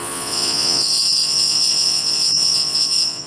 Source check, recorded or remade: remade